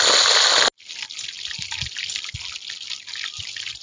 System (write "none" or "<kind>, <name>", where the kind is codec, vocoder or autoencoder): none